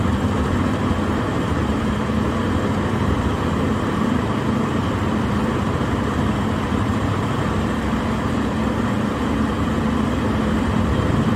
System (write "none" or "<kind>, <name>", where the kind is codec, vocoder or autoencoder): vocoder, BigVGAN v2